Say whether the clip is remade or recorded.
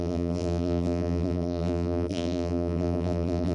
remade